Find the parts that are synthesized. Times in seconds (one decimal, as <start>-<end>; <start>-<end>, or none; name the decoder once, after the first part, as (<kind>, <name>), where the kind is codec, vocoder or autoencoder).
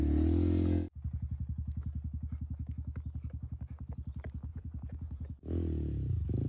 4.5-5.4 (vocoder, Vocos)